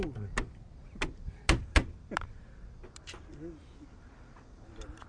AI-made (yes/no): no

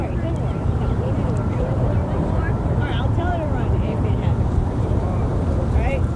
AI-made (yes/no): yes